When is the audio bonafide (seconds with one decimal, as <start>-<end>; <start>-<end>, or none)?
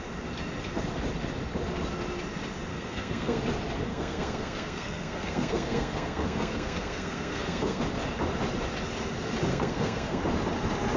0.0-2.7; 3.4-3.9; 7.8-9.5; 10.2-11.0